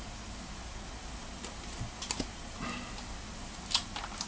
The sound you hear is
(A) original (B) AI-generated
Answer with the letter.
A